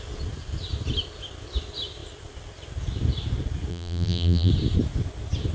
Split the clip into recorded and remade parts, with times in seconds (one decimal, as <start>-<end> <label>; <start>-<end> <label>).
0.0-3.7 recorded; 3.7-4.5 remade; 4.5-5.5 recorded